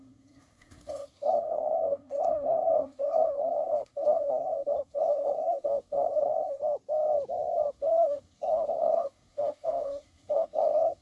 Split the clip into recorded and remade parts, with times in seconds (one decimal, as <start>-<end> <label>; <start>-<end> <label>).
0.0-6.6 remade; 6.6-7.7 recorded; 7.7-11.0 remade